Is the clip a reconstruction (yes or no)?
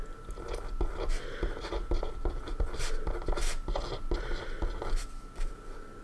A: no